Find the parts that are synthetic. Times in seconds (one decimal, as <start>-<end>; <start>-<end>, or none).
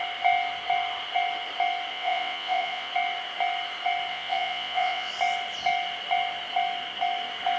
1.9-2.9; 4.1-5.1